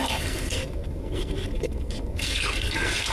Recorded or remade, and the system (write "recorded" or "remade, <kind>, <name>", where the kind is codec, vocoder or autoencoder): remade, codec, SNAC